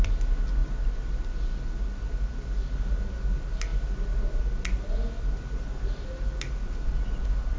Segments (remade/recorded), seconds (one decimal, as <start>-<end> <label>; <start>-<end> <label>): 0.0-7.6 recorded